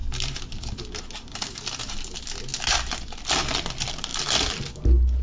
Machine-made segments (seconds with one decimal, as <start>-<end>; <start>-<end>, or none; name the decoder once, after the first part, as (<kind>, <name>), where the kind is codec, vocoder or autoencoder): none